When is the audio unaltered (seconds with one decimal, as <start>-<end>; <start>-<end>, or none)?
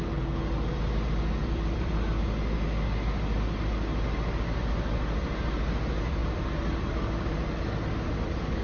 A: 0.0-1.4; 2.2-6.2; 7.3-8.6